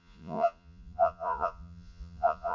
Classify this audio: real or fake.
fake